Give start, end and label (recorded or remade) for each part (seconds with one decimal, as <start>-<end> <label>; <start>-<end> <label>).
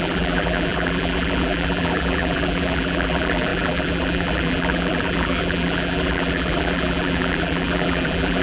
0.0-8.4 remade